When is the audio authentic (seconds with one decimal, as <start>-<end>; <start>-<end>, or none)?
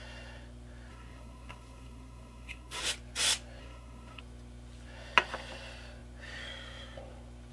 0.0-0.9; 2.8-3.6; 4.2-7.5